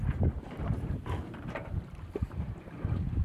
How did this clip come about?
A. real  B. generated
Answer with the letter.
B